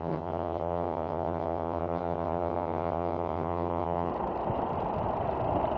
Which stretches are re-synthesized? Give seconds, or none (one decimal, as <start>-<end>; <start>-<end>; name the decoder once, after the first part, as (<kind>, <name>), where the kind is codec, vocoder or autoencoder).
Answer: 0.0-4.1 (vocoder, HiFi-GAN)